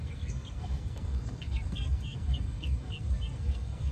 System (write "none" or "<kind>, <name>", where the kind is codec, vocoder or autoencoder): codec, SNAC